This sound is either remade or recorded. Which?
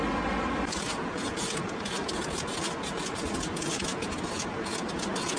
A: recorded